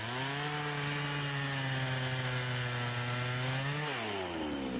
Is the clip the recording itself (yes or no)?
yes